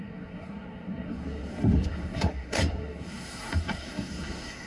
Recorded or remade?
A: remade